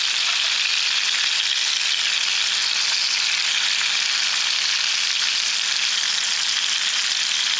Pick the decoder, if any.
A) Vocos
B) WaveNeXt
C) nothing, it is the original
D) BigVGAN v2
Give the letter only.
C